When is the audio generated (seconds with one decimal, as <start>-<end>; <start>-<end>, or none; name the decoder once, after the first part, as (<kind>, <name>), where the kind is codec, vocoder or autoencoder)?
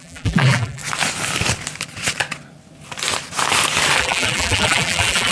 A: 0.0-0.8 (vocoder, BigVGAN v2); 4.0-5.3